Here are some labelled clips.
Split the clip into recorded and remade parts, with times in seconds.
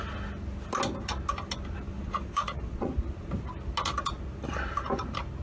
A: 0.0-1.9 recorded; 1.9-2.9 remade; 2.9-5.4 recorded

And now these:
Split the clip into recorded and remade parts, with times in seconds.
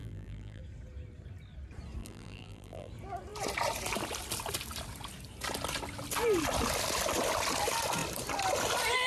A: 0.0-0.6 remade; 0.6-2.0 recorded; 2.0-2.9 remade; 2.9-9.1 recorded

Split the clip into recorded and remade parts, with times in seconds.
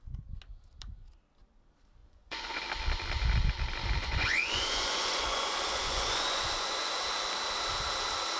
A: 0.0-2.0 recorded; 2.0-2.6 remade; 2.6-4.0 recorded; 4.0-7.0 remade; 7.0-8.4 recorded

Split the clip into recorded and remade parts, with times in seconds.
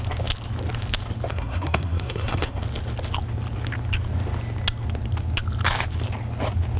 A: 0.0-1.3 recorded; 1.3-2.6 remade; 2.6-6.8 recorded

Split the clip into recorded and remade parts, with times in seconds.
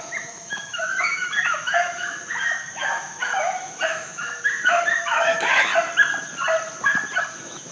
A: 0.0-5.7 remade; 5.7-7.3 recorded; 7.3-7.7 remade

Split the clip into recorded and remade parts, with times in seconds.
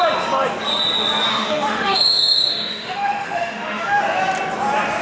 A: 0.0-1.3 recorded; 1.3-4.0 remade; 4.0-5.0 recorded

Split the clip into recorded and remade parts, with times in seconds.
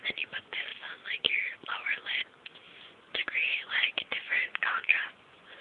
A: 0.0-0.7 remade; 0.7-2.8 recorded; 2.8-5.6 remade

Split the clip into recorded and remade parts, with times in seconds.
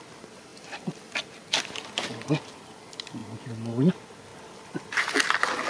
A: 0.0-5.7 recorded